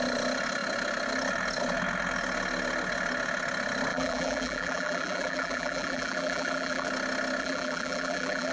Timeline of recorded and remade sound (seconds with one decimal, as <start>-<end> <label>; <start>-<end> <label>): 0.0-3.9 recorded; 3.9-6.9 remade; 6.9-7.4 recorded; 7.4-8.5 remade